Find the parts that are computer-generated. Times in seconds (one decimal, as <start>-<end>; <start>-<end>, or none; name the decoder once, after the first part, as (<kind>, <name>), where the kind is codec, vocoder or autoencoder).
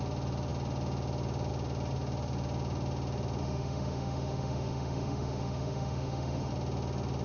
3.4-6.5 (autoencoder, DAC-VAE)